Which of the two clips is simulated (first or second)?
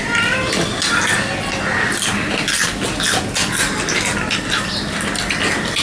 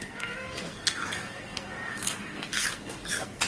second